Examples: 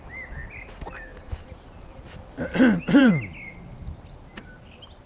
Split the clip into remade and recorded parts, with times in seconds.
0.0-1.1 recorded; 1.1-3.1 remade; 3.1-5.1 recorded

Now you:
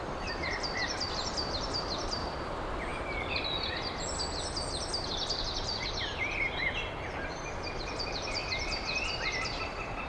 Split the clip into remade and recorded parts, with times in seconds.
0.0-2.9 remade; 2.9-8.0 recorded; 8.0-10.1 remade

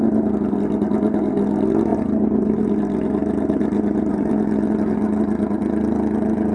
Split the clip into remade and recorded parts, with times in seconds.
0.0-1.9 recorded; 1.9-2.8 remade; 2.8-3.2 recorded; 3.2-4.3 remade; 4.3-6.5 recorded

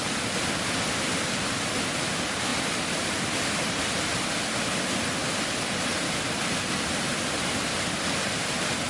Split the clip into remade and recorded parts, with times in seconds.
0.0-8.9 recorded

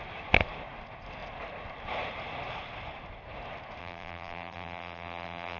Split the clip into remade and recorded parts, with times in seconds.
0.0-3.8 recorded; 3.8-5.6 remade

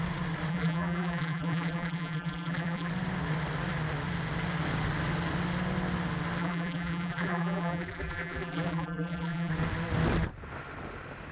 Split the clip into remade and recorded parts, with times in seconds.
0.0-0.5 recorded; 0.5-2.9 remade; 2.9-6.4 recorded; 6.4-9.5 remade; 9.5-11.3 recorded

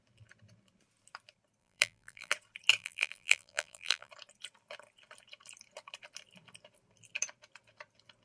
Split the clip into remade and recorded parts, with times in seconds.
0.0-1.6 recorded; 1.6-2.3 remade; 2.3-2.8 recorded; 2.8-4.1 remade; 4.1-8.2 recorded

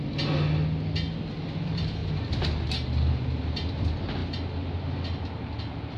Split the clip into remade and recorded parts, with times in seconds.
0.0-6.0 recorded